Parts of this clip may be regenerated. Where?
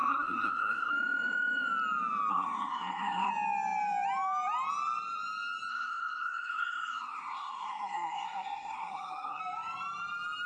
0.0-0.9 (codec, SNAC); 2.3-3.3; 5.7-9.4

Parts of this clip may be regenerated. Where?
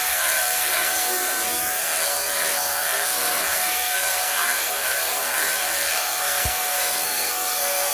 0.0-7.9 (codec, SNAC)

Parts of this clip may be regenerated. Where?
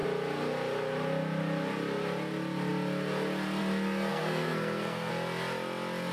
4.1-5.1 (codec, SNAC)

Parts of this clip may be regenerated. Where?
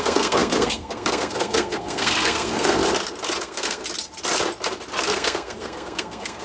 0.0-2.8 (codec, SNAC); 3.4-3.8; 5.0-6.4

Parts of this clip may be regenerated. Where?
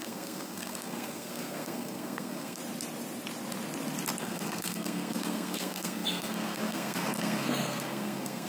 0.0-2.6 (codec, SNAC); 4.2-8.5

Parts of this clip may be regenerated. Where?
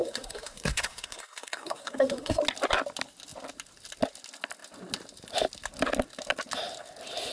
0.0-2.4 (codec, SNAC)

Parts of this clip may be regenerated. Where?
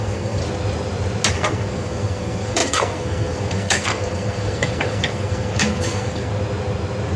0.0-0.4 (codec, SNAC); 1.3-6.3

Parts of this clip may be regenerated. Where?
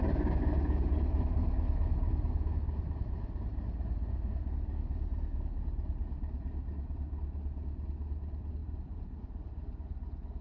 none